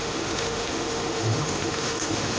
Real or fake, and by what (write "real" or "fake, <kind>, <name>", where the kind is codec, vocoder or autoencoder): fake, autoencoder, DAC-VAE